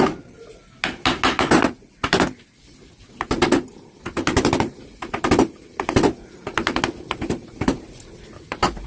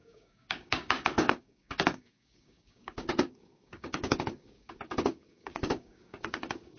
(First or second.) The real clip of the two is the first